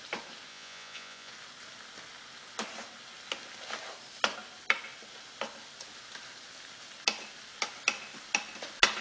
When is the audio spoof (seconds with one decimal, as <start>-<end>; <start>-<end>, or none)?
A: 0.5-1.3